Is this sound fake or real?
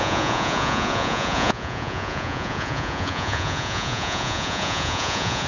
fake